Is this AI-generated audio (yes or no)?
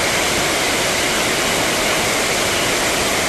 no